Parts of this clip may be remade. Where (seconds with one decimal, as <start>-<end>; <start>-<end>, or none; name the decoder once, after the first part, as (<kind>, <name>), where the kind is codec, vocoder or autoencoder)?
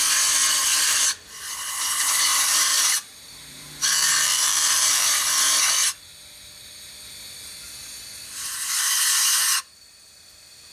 0.6-1.1 (vocoder, BigVGAN v2); 2.3-5.1